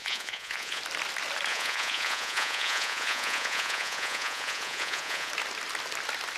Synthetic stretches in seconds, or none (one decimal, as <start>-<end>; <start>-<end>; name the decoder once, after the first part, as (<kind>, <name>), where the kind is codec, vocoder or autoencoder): 0.0-0.8 (vocoder, Vocos); 1.5-5.3